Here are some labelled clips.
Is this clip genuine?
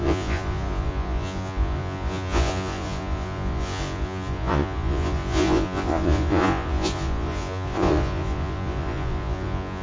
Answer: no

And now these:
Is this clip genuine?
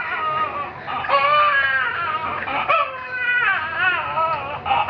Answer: yes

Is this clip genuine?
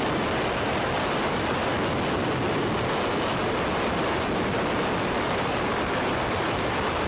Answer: yes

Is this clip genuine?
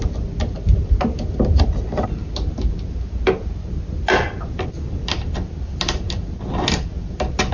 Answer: yes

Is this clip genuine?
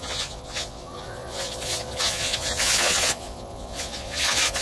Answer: no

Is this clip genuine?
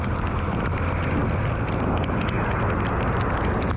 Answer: yes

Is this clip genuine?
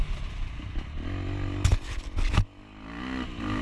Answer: yes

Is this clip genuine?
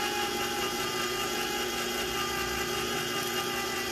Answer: yes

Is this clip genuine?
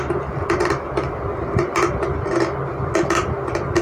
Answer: yes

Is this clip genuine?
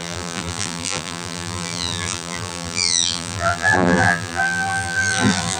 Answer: no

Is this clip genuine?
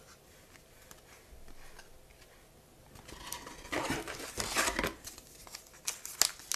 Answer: yes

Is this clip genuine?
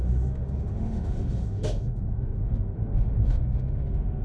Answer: no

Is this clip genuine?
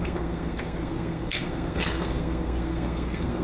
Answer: no